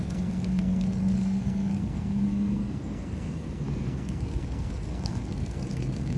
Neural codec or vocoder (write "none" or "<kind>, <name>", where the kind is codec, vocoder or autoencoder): codec, SNAC